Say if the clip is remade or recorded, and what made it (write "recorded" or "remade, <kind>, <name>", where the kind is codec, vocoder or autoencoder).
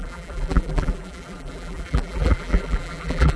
remade, vocoder, BigVGAN v2